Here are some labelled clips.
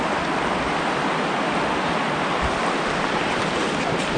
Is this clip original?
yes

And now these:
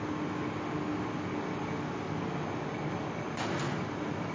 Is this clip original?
yes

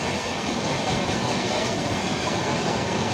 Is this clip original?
no